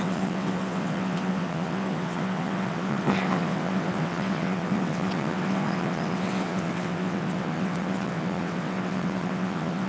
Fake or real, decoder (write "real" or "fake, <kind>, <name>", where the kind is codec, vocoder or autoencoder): fake, vocoder, WaveNeXt